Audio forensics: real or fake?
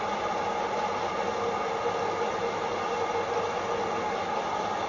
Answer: real